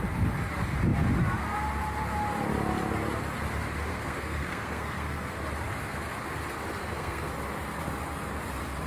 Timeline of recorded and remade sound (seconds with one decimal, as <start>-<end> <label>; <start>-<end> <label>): 0.0-3.9 recorded; 3.9-5.4 remade; 5.4-6.8 recorded; 6.8-7.3 remade; 7.3-8.9 recorded

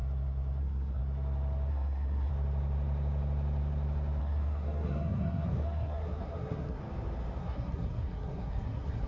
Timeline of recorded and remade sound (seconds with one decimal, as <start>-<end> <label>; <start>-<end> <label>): 0.0-0.6 recorded; 0.6-1.0 remade; 1.0-1.7 recorded; 1.7-2.3 remade; 2.3-4.2 recorded; 4.2-6.8 remade; 6.8-7.4 recorded; 7.4-9.1 remade

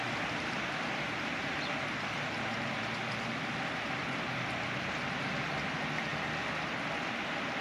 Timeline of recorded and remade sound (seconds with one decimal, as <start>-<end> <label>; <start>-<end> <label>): 0.0-7.6 recorded